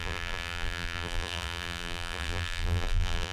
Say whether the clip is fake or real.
fake